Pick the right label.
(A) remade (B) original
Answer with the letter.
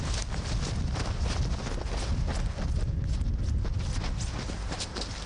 B